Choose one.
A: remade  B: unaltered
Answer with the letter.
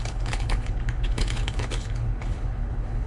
A